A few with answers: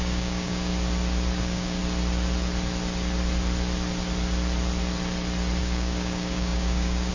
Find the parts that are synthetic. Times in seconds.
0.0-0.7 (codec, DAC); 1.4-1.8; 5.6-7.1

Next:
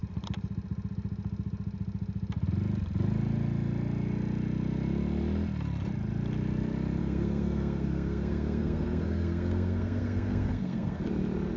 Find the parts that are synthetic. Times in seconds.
7.0-11.0 (codec, SNAC)

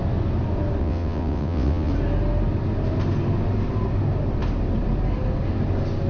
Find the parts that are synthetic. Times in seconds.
0.8-1.9 (vocoder, WaveNeXt)

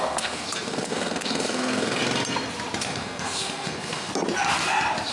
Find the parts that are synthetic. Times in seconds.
0.0-2.0 (codec, SNAC); 2.8-4.1